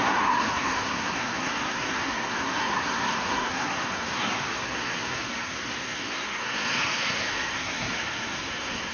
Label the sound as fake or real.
fake